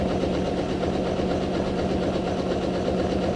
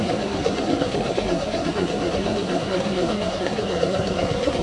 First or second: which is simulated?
second